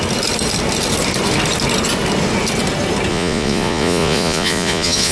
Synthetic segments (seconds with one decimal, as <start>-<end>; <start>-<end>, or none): 3.1-5.1